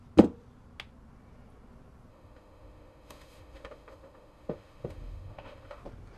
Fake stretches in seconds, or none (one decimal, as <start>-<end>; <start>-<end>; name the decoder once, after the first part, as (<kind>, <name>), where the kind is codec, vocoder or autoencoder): 2.1-5.8 (autoencoder, DAC-VAE)